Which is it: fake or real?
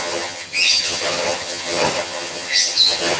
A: fake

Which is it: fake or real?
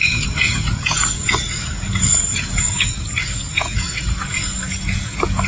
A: fake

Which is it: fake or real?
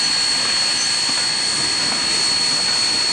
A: real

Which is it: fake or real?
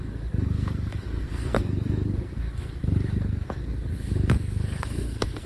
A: fake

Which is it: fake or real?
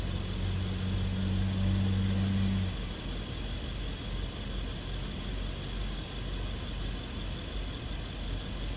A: real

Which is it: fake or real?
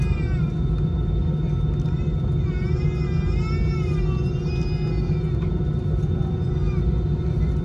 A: real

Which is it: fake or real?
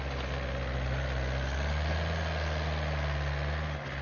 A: real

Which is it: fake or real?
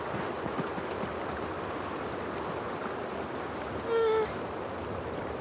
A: real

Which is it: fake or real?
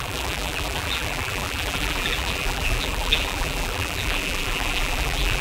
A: fake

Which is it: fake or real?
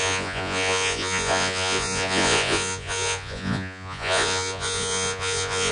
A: fake